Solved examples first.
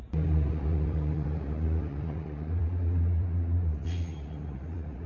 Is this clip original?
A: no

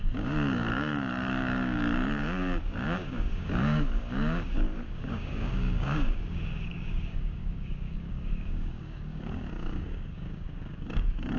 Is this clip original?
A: no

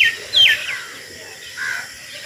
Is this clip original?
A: yes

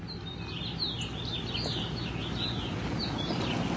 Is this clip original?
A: yes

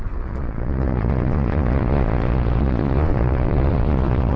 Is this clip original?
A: no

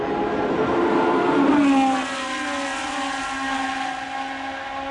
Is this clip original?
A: yes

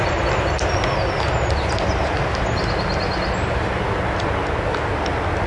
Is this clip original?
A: yes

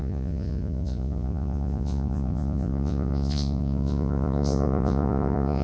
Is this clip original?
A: no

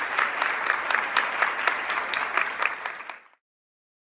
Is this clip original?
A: yes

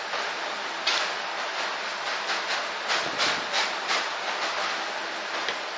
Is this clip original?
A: yes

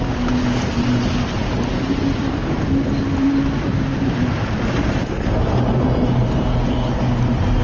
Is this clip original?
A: yes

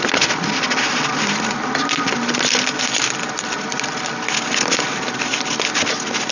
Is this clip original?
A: yes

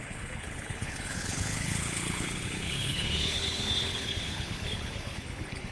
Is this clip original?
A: no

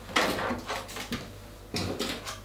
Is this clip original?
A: yes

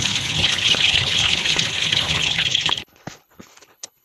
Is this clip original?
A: no